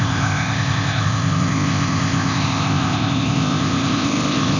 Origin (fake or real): fake